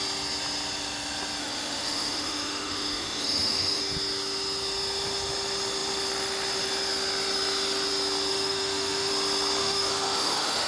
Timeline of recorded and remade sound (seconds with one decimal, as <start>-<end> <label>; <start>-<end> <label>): 0.0-1.4 recorded; 1.4-3.8 remade; 3.8-8.3 recorded; 8.3-9.1 remade; 9.1-9.6 recorded; 9.6-10.7 remade